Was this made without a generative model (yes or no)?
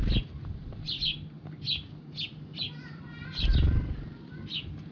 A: yes